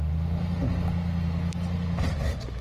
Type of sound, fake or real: real